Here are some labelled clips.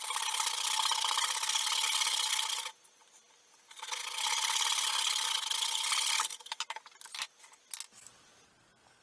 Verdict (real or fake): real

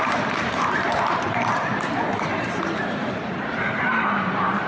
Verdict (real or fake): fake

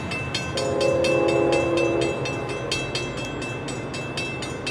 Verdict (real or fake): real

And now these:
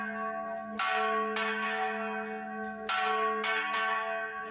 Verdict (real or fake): real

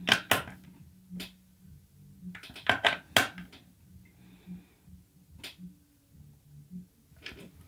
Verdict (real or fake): real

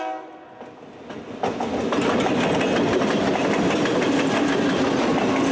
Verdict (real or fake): real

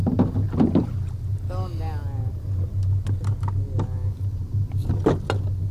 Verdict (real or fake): real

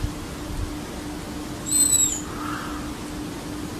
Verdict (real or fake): real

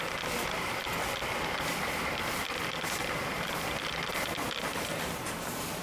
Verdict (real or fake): fake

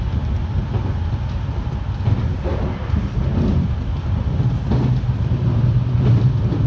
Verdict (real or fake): fake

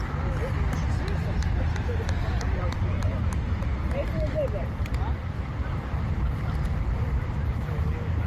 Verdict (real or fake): real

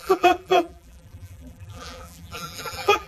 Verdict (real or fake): fake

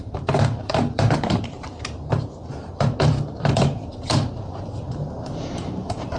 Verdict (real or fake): fake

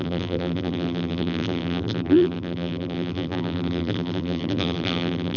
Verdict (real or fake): fake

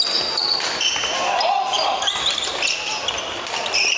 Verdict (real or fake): fake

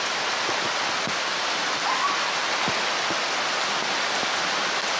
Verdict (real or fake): real